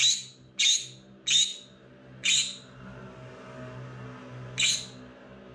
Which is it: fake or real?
real